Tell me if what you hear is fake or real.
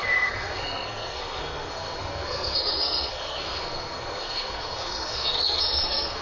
fake